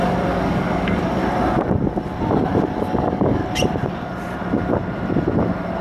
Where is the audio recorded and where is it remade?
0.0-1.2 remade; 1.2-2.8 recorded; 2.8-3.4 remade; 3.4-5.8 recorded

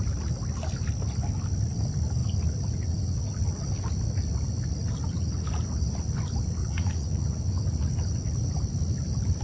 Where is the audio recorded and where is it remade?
0.0-6.6 recorded; 6.6-7.4 remade; 7.4-9.4 recorded

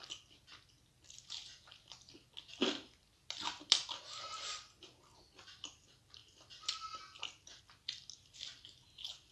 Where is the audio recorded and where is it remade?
0.0-9.3 recorded

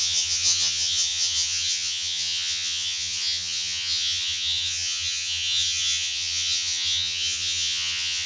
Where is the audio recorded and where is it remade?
0.0-8.3 remade

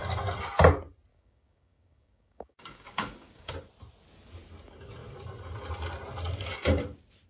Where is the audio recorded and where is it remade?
0.0-1.1 recorded; 1.1-3.5 remade; 3.5-7.3 recorded

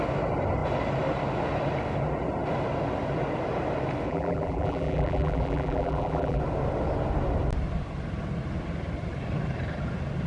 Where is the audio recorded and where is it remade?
0.0-4.1 recorded; 4.1-6.4 remade; 6.4-10.3 recorded